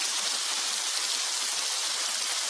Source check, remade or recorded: recorded